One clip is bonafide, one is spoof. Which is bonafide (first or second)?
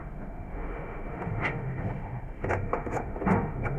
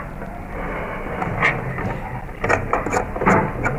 second